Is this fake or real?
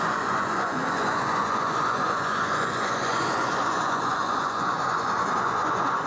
fake